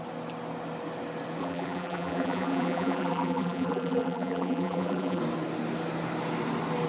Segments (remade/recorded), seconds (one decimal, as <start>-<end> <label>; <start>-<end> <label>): 0.0-1.4 recorded; 1.4-5.2 remade; 5.2-6.9 recorded